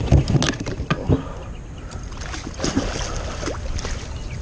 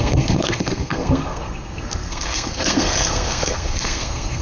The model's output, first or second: second